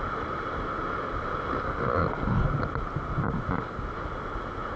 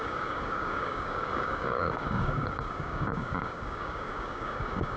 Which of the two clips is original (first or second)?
first